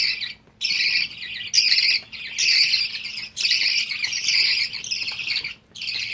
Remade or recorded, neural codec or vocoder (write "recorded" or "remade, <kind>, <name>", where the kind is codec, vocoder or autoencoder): recorded